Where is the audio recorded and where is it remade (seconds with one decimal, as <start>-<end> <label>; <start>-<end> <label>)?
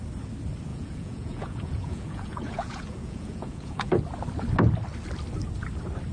0.0-0.7 recorded; 0.7-3.9 remade; 3.9-6.1 recorded